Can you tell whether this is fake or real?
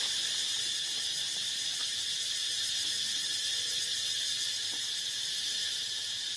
fake